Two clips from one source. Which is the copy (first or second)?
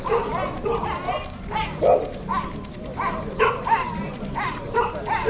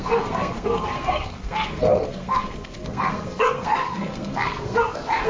second